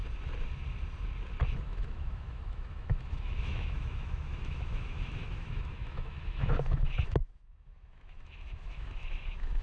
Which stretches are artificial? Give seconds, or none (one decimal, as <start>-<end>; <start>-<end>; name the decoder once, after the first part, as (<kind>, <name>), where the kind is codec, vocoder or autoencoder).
1.6-9.6 (autoencoder, DAC-VAE)